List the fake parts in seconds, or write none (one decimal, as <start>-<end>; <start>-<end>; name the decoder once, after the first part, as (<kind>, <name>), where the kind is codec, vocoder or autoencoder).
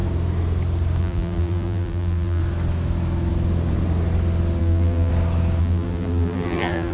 1.0-2.4 (vocoder, BigVGAN v2); 4.6-5.1; 5.6-6.9